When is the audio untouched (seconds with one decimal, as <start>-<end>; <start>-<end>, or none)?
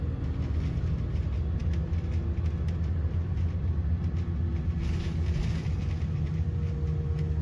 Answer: 0.0-7.4